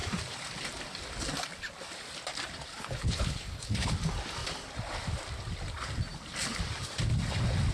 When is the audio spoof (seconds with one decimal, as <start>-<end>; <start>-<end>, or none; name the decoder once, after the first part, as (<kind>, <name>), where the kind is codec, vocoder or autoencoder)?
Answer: 2.8-3.9 (codec, HILCodec)